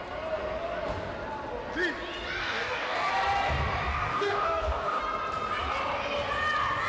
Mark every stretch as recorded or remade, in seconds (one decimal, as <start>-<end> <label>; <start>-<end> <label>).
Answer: 0.0-2.4 recorded; 2.4-3.1 remade; 3.1-3.9 recorded; 3.9-5.0 remade; 5.0-6.9 recorded